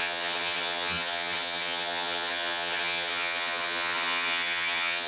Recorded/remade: remade